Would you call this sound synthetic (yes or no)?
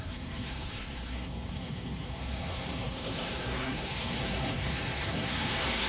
yes